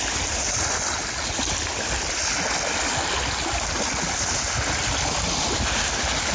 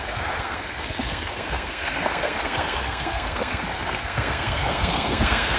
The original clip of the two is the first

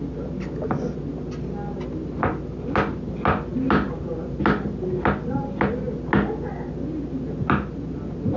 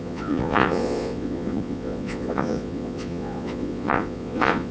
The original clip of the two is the first